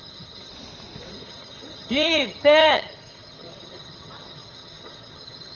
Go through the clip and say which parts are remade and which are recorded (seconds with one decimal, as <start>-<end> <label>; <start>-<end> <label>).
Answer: 0.0-0.5 remade; 0.5-1.1 recorded; 1.1-5.6 remade